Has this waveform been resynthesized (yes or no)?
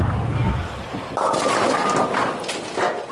no